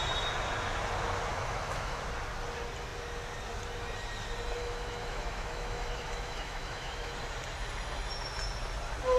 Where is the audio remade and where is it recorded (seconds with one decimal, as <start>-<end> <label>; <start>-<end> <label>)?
0.0-1.3 recorded; 1.3-2.0 remade; 2.0-4.6 recorded; 4.6-7.1 remade; 7.1-9.2 recorded